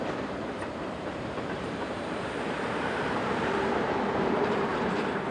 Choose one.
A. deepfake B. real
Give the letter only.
A